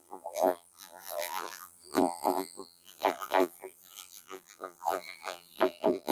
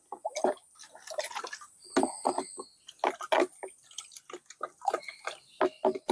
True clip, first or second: second